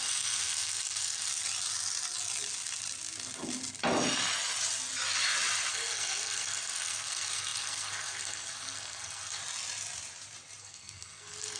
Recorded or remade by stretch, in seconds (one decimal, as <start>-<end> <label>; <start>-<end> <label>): 0.0-1.3 remade; 1.3-5.7 recorded; 5.7-9.4 remade; 9.4-10.6 recorded; 10.6-11.6 remade